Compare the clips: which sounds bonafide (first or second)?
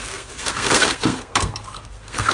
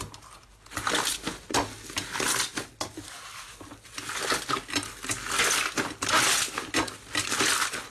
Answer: second